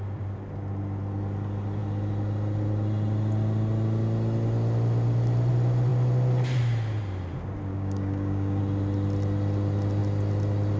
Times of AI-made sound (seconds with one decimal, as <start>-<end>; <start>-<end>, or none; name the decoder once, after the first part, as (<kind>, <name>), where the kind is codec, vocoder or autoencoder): 7.7-8.6 (codec, DAC)